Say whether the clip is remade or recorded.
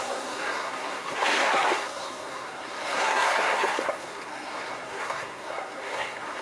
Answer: remade